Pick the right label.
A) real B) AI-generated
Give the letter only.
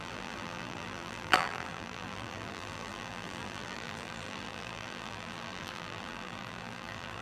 B